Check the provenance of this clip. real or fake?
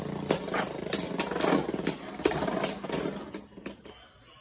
real